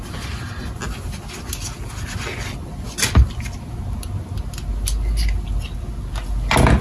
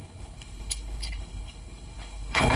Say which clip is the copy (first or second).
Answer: second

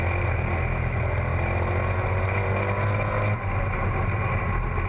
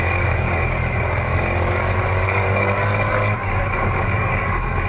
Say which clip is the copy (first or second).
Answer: second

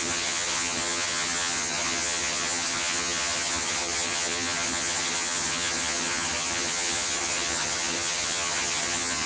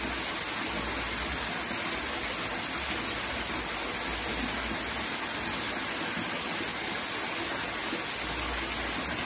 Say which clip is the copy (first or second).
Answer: first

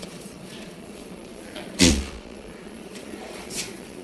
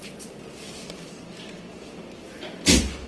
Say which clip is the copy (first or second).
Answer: first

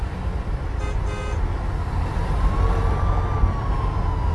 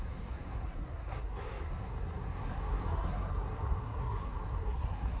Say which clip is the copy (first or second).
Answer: second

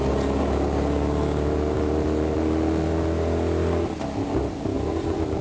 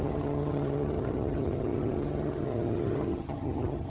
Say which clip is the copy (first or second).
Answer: second